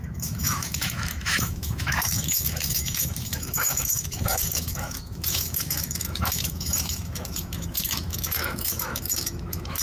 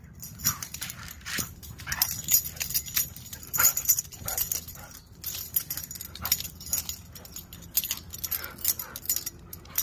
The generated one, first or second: first